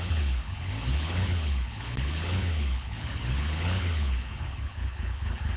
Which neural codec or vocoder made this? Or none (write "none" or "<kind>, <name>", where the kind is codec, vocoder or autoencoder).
codec, HILCodec